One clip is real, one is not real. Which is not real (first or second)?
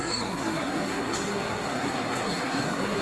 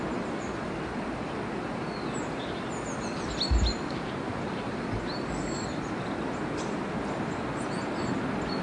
first